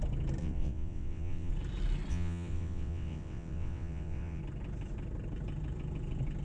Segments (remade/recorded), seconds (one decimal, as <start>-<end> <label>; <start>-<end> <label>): 0.0-0.4 recorded; 0.4-1.5 remade; 1.5-2.1 recorded; 2.1-4.4 remade; 4.4-6.4 recorded